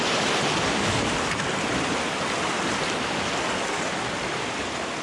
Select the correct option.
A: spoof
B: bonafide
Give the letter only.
B